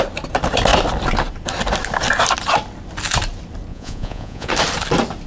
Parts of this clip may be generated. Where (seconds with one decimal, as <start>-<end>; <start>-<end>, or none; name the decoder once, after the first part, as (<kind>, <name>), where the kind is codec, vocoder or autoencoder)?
3.7-4.5 (vocoder, Vocos)